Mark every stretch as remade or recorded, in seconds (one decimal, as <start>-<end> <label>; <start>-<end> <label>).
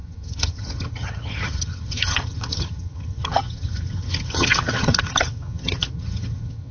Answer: 0.0-6.7 remade